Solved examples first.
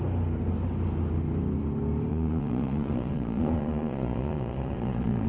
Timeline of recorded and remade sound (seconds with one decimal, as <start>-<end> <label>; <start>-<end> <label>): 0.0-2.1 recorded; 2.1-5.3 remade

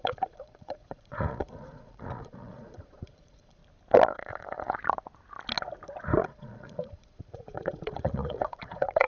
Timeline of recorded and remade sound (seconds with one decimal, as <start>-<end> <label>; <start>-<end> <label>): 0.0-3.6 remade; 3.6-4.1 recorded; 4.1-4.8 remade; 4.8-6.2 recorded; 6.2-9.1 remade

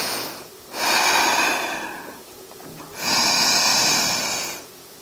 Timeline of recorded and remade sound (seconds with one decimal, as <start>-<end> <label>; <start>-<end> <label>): 0.0-0.5 remade; 0.5-1.9 recorded; 1.9-3.7 remade; 3.7-4.3 recorded; 4.3-5.0 remade